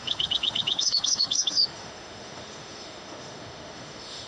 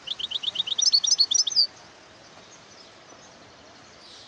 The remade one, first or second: first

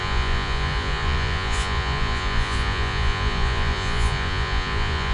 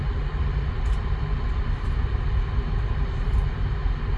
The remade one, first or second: first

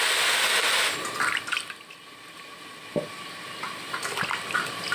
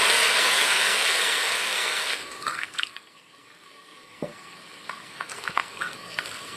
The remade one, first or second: second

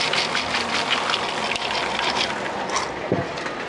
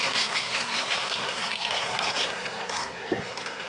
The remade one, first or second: second